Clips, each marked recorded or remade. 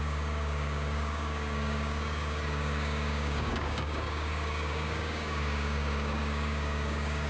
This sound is remade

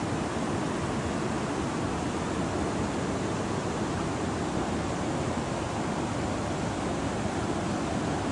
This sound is recorded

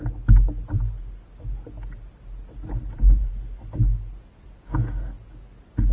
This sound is recorded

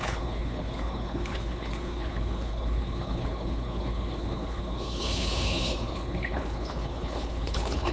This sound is remade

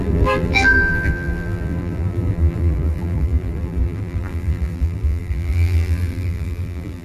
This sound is remade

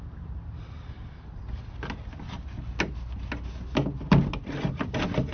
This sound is recorded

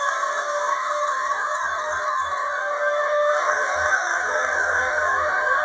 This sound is remade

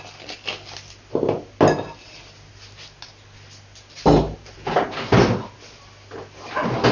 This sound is recorded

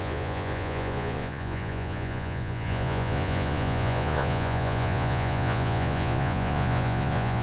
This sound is remade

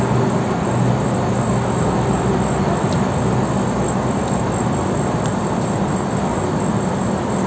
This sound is recorded